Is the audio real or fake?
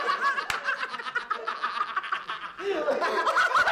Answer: real